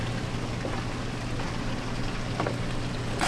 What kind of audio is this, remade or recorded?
recorded